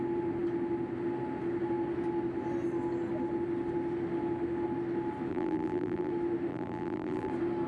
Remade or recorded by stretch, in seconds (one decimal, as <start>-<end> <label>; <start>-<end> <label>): 0.0-5.3 recorded; 5.3-6.1 remade; 6.1-6.5 recorded; 6.5-7.3 remade; 7.3-7.7 recorded